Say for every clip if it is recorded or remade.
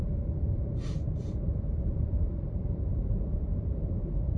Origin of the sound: remade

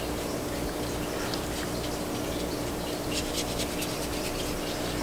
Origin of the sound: remade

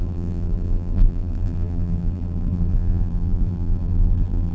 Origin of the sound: remade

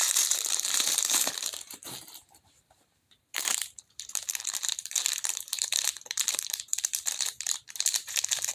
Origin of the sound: remade